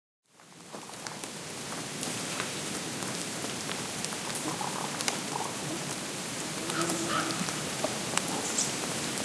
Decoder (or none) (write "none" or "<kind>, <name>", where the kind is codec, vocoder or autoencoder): vocoder, BigVGAN v2